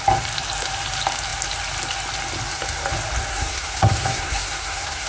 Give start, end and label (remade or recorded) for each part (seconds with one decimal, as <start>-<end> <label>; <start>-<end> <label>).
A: 0.0-3.3 recorded; 3.3-5.1 remade